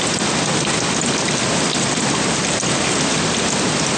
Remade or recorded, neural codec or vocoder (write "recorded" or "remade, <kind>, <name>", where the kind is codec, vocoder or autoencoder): recorded